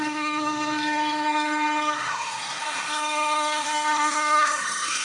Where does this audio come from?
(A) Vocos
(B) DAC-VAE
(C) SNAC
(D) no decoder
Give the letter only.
C